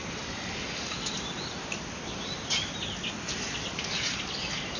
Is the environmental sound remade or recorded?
recorded